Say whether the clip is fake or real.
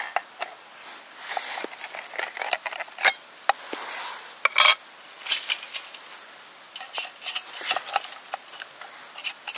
real